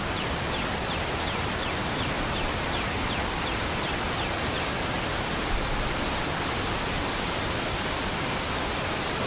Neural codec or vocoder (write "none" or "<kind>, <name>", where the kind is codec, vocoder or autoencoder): none